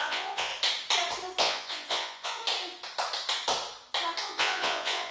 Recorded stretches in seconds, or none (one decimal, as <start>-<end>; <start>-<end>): 0.5-1.4; 2.4-4.2